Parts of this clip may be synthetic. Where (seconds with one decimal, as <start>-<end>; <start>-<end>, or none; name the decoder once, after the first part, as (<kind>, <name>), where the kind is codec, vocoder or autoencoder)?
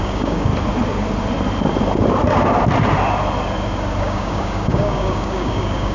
0.0-0.5 (codec, DAC); 4.0-5.9